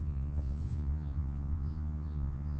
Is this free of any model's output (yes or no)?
no